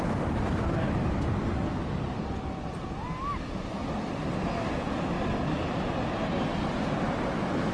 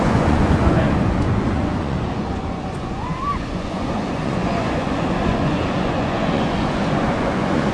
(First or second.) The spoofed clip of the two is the second